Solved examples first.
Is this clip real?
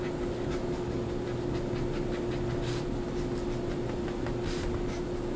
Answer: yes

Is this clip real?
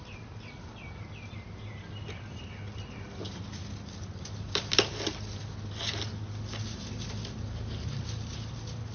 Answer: yes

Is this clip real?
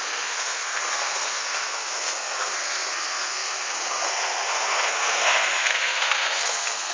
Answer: no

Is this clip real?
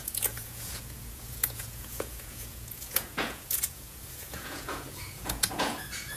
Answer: no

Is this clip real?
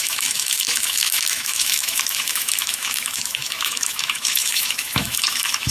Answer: no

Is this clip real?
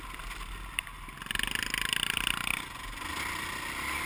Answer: yes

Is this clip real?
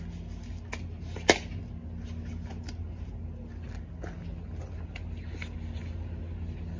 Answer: yes